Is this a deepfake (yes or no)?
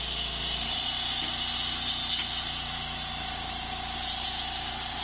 no